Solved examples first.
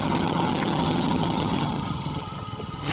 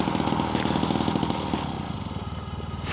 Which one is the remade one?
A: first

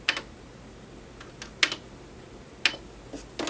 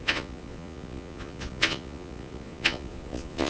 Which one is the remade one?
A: second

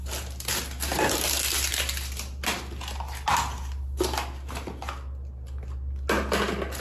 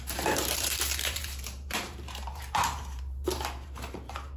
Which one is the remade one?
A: second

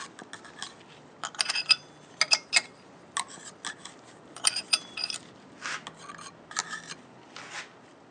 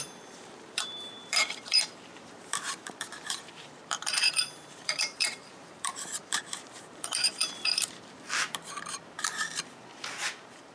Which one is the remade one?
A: second